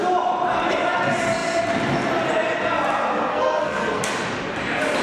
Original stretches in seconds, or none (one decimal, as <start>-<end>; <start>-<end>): 0.0-3.3; 4.1-5.0